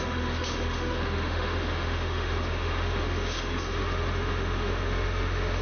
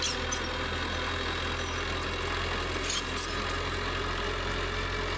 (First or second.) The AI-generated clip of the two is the first